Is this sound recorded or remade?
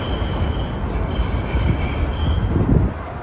recorded